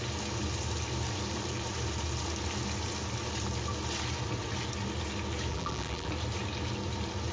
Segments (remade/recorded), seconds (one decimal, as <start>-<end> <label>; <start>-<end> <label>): 0.0-5.5 recorded; 5.5-6.1 remade; 6.1-7.3 recorded

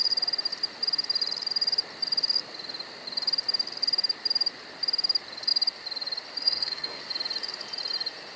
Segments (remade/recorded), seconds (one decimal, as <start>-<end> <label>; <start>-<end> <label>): 0.0-6.4 recorded; 6.4-7.0 remade; 7.0-8.4 recorded

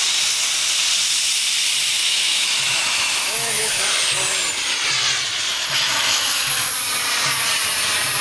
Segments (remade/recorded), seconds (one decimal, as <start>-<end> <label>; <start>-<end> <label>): 0.0-2.0 recorded; 2.0-3.8 remade; 3.8-5.5 recorded; 5.5-6.7 remade; 6.7-8.2 recorded

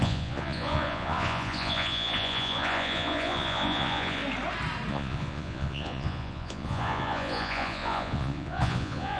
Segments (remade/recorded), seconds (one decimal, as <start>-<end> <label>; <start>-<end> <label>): 0.0-4.2 remade; 4.2-4.9 recorded; 4.9-9.2 remade

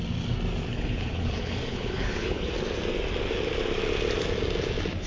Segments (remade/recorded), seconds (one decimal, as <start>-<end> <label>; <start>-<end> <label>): 0.0-0.7 recorded; 0.7-2.5 remade; 2.5-5.1 recorded

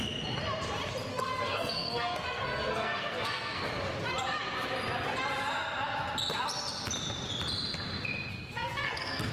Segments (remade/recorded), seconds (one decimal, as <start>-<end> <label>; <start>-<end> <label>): 0.0-1.1 recorded; 1.1-3.7 remade; 3.7-8.3 recorded; 8.3-9.3 remade

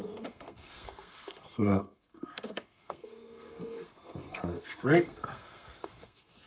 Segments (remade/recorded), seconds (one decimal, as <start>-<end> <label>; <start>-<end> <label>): 0.0-6.5 remade

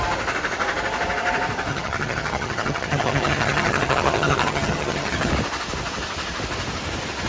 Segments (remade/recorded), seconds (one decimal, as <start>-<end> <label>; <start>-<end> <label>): 0.0-1.7 recorded; 1.7-5.3 remade; 5.3-7.3 recorded